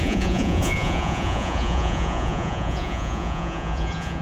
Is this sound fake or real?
fake